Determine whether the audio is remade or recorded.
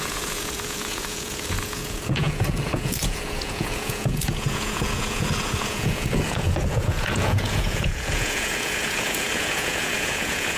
remade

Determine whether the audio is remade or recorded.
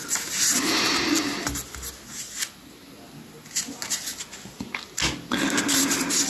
recorded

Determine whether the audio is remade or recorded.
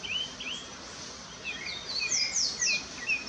recorded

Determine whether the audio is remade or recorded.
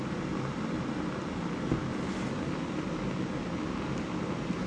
recorded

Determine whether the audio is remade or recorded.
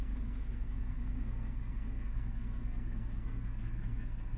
remade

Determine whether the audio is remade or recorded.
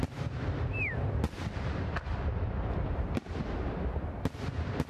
recorded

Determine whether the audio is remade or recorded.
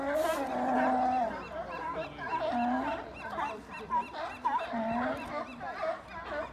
recorded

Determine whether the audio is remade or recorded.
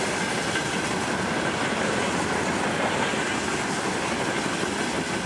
recorded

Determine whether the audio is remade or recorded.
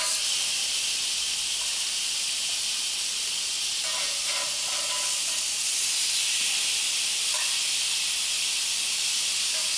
recorded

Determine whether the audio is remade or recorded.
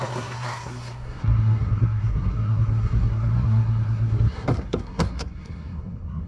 remade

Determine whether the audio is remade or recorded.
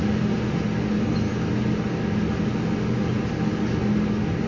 recorded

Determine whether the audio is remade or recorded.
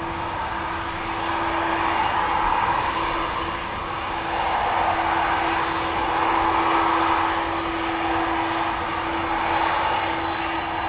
recorded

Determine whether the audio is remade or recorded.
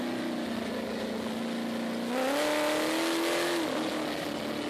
recorded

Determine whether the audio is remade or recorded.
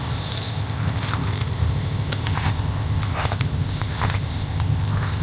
remade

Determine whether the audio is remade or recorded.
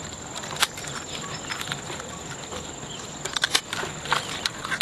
remade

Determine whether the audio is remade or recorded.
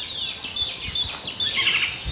recorded